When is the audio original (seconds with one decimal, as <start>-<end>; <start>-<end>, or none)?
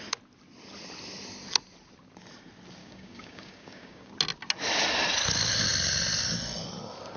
0.0-2.8; 4.1-7.2